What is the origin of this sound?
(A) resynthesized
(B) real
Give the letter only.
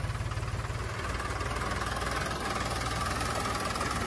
B